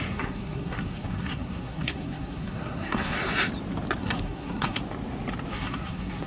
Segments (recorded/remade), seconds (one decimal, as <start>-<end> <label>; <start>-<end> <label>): 0.0-3.2 remade; 3.2-4.0 recorded; 4.0-4.8 remade; 4.8-5.5 recorded; 5.5-6.3 remade